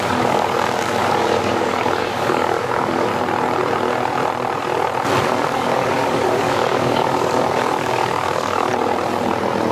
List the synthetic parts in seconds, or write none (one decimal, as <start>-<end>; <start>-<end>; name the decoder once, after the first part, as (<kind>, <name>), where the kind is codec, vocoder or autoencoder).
0.0-3.1 (codec, DAC); 5.2-8.7